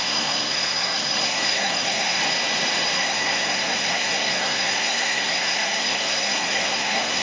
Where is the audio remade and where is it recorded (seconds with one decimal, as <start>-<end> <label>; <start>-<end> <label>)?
0.0-2.2 remade; 2.2-3.0 recorded; 3.0-7.2 remade